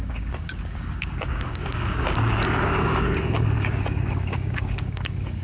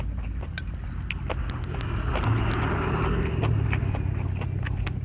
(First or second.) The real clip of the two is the second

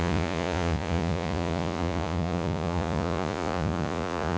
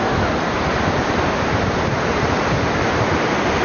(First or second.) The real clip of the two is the second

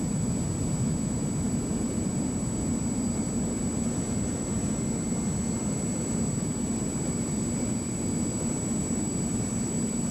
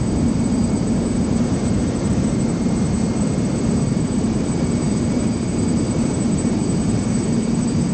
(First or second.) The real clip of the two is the first